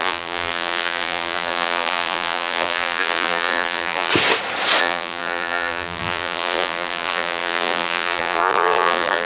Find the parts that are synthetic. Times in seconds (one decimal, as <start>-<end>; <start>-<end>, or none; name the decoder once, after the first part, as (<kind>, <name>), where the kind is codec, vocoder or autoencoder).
0.0-4.1 (vocoder, BigVGAN v2); 4.8-9.2